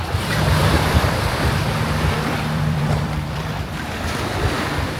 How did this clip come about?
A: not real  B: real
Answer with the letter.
A